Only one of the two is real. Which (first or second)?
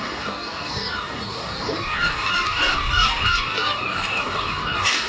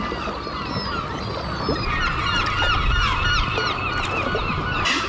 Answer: second